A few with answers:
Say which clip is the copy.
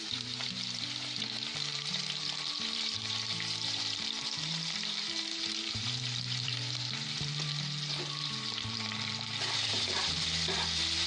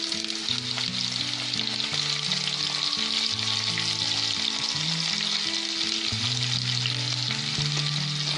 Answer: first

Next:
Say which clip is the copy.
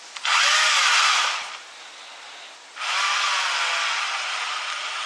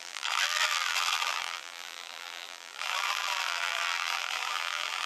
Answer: second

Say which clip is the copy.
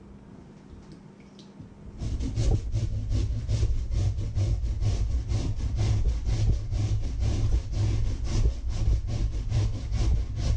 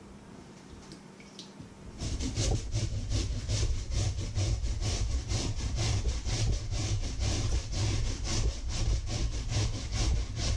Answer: second